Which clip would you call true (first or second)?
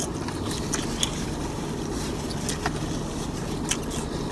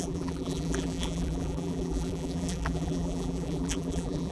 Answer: first